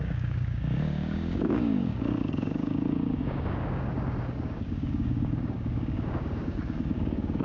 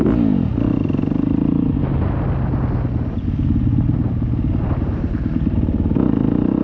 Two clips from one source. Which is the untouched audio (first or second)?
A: second